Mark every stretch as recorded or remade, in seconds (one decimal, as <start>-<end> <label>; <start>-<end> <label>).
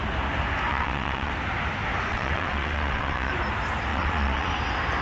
0.0-0.7 recorded; 0.7-1.3 remade; 1.3-2.1 recorded; 2.1-3.3 remade; 3.3-3.9 recorded; 3.9-4.5 remade; 4.5-5.0 recorded